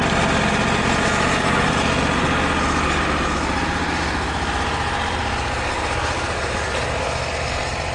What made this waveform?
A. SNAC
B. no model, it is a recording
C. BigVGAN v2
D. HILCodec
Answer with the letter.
B